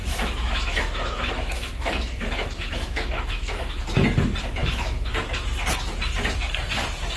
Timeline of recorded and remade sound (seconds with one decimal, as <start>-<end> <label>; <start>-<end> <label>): 0.0-3.8 remade; 3.8-4.6 recorded; 4.6-5.1 remade; 5.1-7.2 recorded